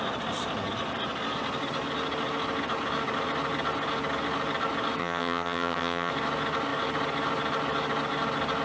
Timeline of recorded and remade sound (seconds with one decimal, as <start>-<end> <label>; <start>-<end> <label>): 0.0-5.0 recorded; 5.0-6.1 remade; 6.1-8.6 recorded